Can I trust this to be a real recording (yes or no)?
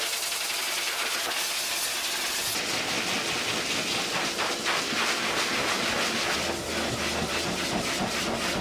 yes